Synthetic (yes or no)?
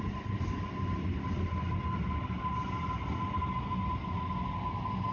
no